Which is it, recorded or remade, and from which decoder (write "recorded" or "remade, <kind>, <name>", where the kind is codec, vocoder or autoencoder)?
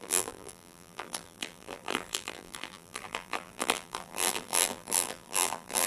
remade, vocoder, BigVGAN v2